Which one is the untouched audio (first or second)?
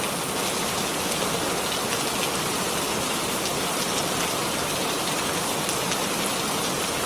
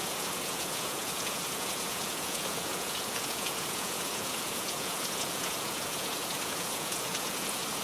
first